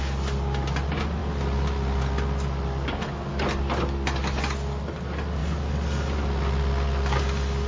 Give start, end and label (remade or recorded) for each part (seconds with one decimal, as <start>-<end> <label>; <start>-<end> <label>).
0.0-7.7 recorded